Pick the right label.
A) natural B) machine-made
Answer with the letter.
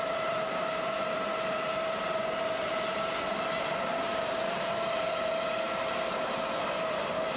B